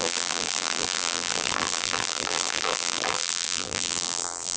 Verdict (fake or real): fake